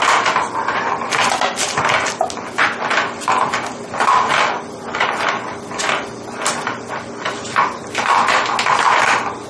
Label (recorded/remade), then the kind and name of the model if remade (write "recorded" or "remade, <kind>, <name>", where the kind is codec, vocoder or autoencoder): recorded